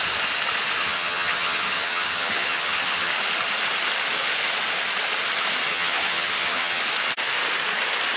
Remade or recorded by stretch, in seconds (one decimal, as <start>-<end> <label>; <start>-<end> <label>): 0.0-0.8 recorded; 0.8-3.1 remade; 3.1-5.7 recorded; 5.7-6.8 remade; 6.8-8.2 recorded